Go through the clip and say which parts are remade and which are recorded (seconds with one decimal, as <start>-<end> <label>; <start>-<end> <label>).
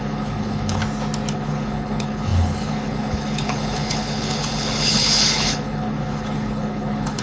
0.0-0.8 remade; 0.8-1.3 recorded; 1.3-7.2 remade